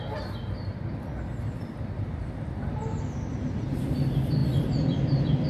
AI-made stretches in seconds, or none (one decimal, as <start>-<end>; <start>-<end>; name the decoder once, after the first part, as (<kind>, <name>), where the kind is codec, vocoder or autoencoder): none